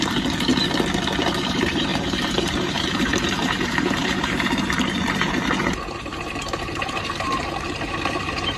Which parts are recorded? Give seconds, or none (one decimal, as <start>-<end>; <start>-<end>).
0.5-1.2